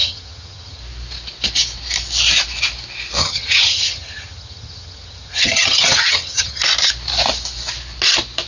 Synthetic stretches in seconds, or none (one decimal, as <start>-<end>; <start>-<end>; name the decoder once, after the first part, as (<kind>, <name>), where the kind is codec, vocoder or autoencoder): 0.0-0.8 (vocoder, HiFi-GAN); 3.2-6.6